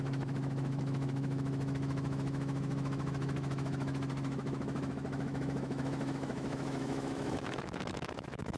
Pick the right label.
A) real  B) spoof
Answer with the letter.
B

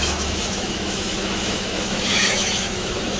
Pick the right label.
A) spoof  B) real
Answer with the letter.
A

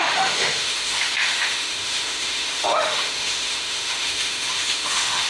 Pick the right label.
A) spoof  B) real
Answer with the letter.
A